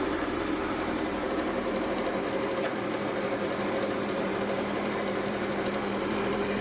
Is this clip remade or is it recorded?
remade